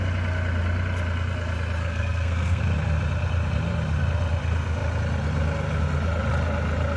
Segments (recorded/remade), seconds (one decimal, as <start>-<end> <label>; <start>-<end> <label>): 0.0-1.8 recorded; 1.8-2.6 remade; 2.6-7.0 recorded